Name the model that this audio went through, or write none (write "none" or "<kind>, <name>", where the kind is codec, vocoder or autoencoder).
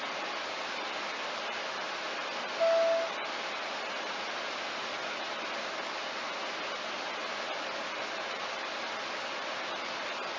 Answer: none